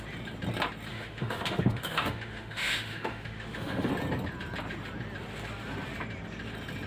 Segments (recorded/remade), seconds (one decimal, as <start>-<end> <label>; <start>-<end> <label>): 0.0-0.9 recorded; 0.9-3.9 remade; 3.9-6.9 recorded